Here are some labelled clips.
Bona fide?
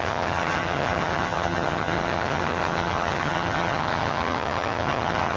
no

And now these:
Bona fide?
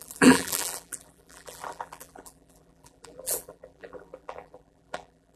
no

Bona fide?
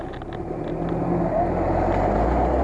yes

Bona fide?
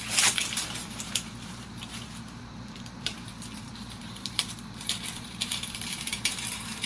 no